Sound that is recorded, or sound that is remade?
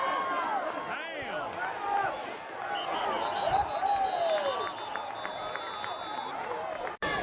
recorded